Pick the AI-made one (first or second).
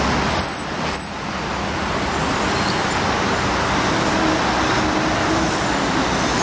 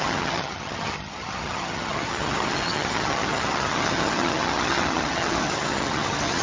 second